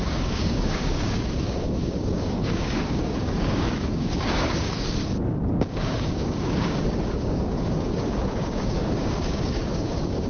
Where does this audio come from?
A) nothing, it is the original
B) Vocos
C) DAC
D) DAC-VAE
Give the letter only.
C